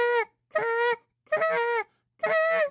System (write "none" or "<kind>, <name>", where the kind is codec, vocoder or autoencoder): none